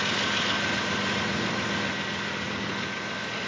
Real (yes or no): yes